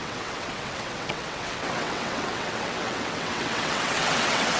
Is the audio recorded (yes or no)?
no